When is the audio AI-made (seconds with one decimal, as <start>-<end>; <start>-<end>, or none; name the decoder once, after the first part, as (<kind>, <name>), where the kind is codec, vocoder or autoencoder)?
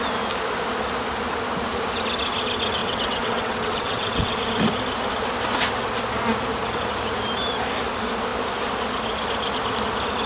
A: 2.8-4.4 (vocoder, WaveNeXt)